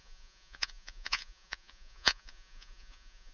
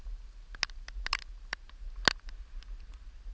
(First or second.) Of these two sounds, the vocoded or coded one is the first